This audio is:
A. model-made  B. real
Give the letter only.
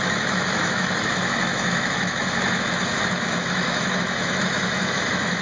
A